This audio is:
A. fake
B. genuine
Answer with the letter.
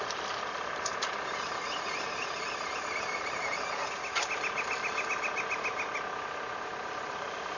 B